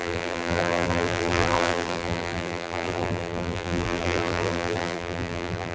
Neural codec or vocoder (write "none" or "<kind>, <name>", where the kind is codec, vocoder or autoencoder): vocoder, BigVGAN v2